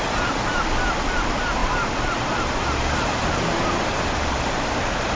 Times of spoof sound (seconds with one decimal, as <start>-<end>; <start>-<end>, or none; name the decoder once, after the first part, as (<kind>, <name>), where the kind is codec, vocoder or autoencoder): none